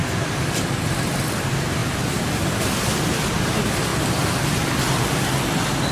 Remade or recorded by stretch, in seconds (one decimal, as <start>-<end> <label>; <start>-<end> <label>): 0.0-1.8 recorded; 1.8-3.5 remade; 3.5-3.9 recorded; 3.9-5.1 remade; 5.1-5.9 recorded